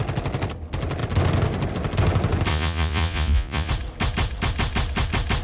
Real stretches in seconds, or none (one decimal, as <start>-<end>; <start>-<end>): 0.0-2.5; 3.7-5.4